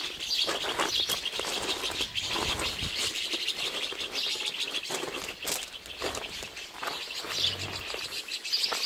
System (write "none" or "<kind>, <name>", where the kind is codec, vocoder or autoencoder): none